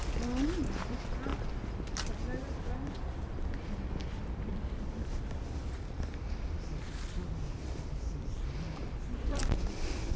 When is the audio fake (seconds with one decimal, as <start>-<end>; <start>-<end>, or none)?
none